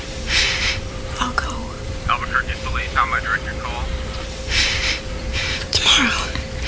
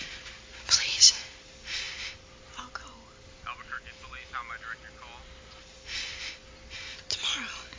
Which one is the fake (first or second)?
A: first